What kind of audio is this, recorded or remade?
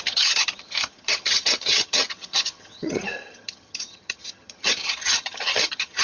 remade